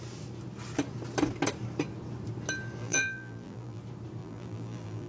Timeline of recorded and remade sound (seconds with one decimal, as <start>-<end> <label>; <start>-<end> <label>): 0.0-2.8 recorded; 2.8-3.8 remade; 3.8-4.2 recorded; 4.2-5.1 remade